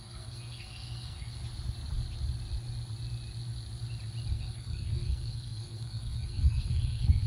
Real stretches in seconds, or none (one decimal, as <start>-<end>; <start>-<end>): 1.4-4.3